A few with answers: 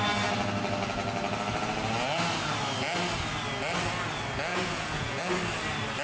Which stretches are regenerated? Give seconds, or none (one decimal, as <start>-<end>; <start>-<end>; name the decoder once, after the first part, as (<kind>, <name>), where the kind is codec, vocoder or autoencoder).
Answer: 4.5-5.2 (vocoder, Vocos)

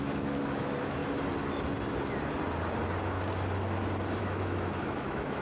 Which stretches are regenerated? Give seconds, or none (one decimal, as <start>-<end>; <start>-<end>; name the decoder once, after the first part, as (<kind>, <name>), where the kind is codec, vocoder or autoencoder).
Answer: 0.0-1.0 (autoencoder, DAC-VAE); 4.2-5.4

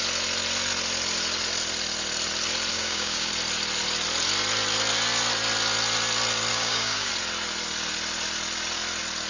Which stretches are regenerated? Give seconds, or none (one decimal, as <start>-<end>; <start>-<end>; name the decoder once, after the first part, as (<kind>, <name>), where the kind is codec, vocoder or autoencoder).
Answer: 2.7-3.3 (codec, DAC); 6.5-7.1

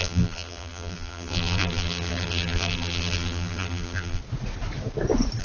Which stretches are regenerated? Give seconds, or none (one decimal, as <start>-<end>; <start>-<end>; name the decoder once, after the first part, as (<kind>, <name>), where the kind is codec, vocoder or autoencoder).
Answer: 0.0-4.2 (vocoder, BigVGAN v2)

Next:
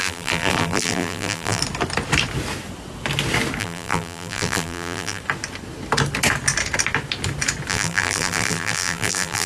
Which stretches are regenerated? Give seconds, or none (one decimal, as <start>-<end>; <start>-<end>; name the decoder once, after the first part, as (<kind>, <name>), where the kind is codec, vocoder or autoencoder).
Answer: 0.0-1.6 (vocoder, BigVGAN v2); 3.6-5.2; 7.7-9.5